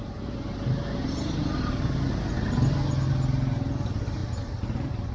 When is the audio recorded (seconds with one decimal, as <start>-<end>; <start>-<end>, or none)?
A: 0.0-5.1